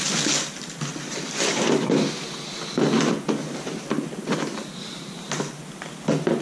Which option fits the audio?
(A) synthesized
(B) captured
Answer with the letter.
B